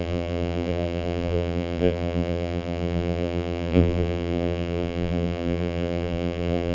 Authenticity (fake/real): fake